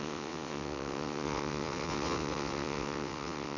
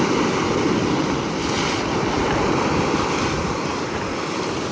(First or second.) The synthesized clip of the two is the first